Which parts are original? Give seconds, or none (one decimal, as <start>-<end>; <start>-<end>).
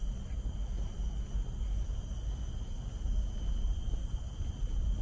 0.6-3.6